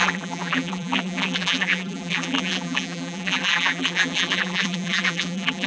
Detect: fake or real fake